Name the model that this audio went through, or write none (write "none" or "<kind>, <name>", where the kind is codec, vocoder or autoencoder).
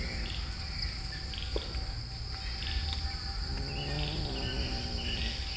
none